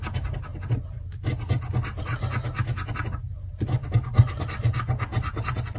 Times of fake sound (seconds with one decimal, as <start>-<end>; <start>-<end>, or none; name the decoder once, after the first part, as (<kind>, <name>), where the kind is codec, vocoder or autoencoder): none